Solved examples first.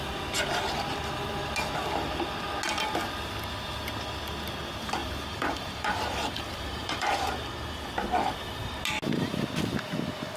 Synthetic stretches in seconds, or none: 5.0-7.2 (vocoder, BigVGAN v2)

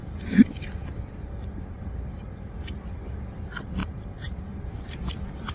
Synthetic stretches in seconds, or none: 0.0-5.5 (vocoder, BigVGAN v2)